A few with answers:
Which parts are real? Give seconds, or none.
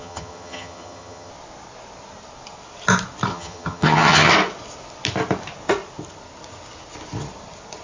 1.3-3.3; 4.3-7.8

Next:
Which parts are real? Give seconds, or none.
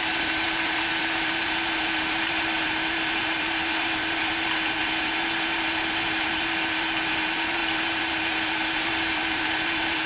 none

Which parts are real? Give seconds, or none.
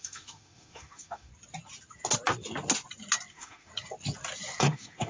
1.3-3.3; 3.7-4.6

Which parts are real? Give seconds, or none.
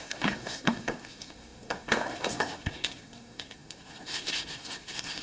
none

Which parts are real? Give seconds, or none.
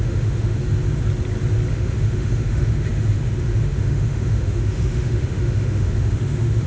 0.6-1.7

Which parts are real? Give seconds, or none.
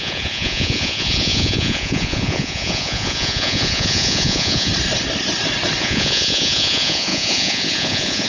4.7-5.8